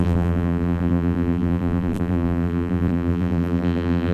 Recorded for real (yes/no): no